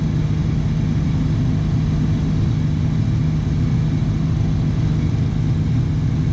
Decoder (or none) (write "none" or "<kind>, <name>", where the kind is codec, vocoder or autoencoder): none